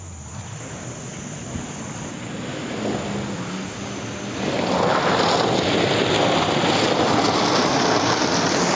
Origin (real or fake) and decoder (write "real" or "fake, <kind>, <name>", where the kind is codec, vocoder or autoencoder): real